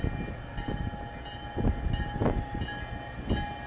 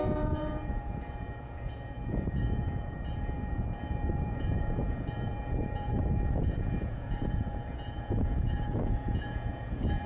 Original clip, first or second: first